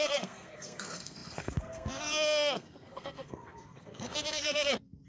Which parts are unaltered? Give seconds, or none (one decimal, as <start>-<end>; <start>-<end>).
none